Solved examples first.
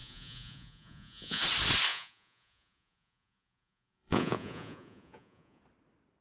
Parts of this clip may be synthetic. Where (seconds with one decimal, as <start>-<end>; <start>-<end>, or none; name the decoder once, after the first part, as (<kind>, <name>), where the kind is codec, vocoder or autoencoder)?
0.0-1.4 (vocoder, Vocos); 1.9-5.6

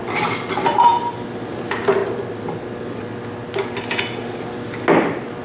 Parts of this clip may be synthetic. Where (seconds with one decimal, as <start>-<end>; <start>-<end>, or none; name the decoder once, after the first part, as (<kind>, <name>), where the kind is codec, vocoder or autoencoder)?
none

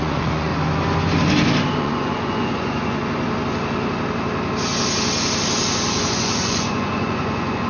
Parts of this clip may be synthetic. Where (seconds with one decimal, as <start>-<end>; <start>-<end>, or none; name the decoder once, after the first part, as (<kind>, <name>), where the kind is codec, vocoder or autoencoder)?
0.0-0.5 (vocoder, Vocos); 1.8-3.0; 6.0-7.7